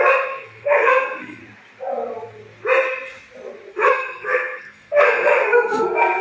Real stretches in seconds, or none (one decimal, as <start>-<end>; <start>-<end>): 1.4-3.7